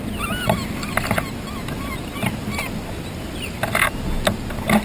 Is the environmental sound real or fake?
real